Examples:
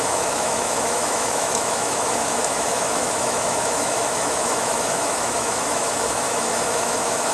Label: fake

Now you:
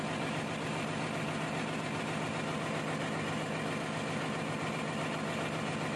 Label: real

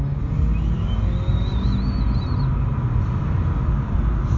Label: real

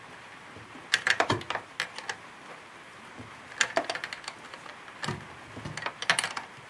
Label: real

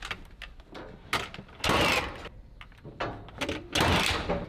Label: real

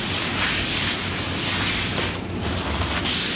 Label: real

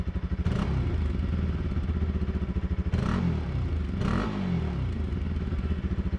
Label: real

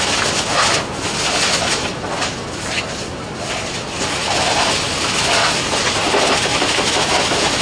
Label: real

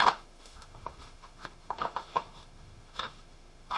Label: fake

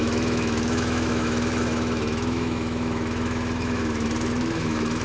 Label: fake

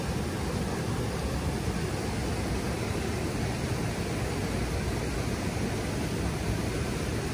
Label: real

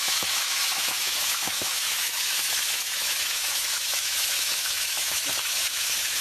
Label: fake